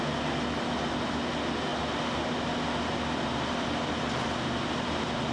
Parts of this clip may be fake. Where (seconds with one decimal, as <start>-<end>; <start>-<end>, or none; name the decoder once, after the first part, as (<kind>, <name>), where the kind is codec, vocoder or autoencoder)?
none